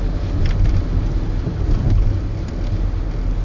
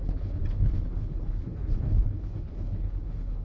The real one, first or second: first